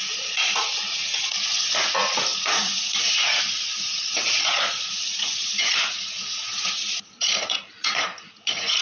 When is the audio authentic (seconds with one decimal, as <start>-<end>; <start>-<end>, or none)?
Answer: none